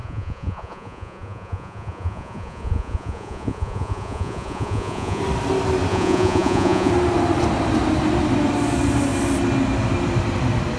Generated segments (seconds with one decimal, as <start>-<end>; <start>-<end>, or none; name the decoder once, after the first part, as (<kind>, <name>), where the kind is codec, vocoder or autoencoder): 0.0-5.2 (vocoder, Vocos); 5.9-6.9

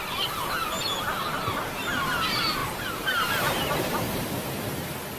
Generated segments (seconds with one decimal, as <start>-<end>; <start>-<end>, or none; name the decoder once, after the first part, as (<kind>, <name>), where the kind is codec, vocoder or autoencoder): 2.6-4.3 (vocoder, BigVGAN v2)

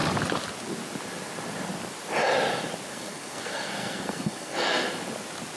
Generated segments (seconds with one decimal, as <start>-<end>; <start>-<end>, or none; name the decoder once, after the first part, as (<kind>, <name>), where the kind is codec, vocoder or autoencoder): 2.9-4.9 (codec, SNAC)

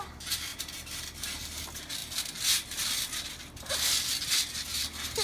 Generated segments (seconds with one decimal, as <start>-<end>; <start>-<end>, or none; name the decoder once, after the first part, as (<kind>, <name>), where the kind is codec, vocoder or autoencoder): 0.5-1.6 (vocoder, BigVGAN v2)

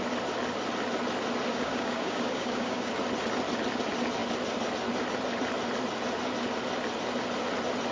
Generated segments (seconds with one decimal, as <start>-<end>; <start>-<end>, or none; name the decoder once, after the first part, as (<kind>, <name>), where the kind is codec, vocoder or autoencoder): 1.5-2.9 (codec, DAC)

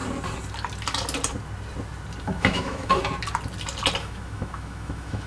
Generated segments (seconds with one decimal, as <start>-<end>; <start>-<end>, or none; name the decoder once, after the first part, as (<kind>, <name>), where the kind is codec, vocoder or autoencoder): 2.2-3.0 (autoencoder, DAC-VAE); 4.0-5.3